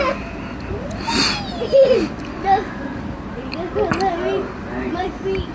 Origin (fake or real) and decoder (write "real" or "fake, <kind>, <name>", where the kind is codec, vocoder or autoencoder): real